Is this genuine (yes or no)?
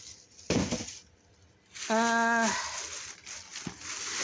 yes